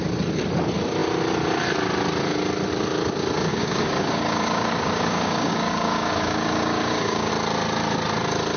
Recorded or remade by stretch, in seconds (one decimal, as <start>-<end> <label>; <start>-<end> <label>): 0.0-3.5 recorded; 3.5-7.3 remade; 7.3-8.6 recorded

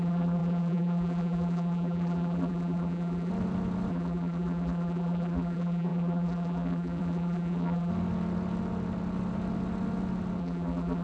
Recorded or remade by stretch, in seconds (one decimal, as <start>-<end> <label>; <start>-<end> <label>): 0.0-3.3 remade; 3.3-3.9 recorded; 3.9-7.9 remade; 7.9-10.4 recorded; 10.4-11.0 remade